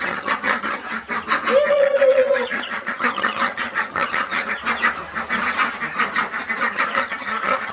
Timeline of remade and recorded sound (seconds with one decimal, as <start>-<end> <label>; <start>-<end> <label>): 0.0-0.8 remade; 0.8-1.7 recorded; 1.7-4.6 remade; 4.6-6.6 recorded; 6.6-7.7 remade